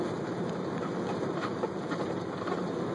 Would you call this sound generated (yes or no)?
yes